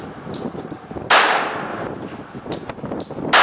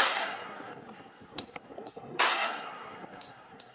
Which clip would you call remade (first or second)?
second